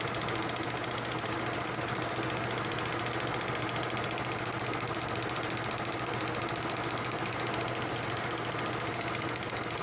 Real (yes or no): yes